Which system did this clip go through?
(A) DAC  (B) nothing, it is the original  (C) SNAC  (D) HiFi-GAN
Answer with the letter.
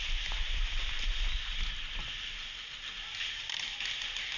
B